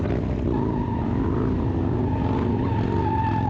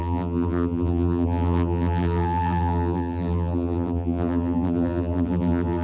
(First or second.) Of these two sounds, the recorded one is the first